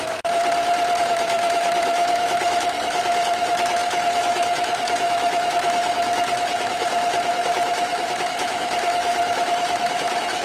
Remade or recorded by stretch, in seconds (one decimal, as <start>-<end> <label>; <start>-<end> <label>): 0.0-0.4 remade; 0.4-1.0 recorded; 1.0-10.4 remade